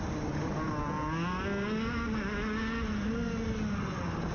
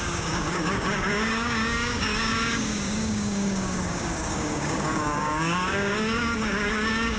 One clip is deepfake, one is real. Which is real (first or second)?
first